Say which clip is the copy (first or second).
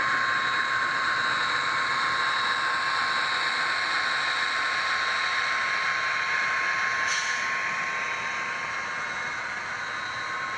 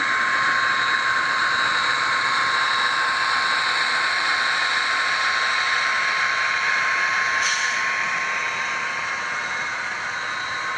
second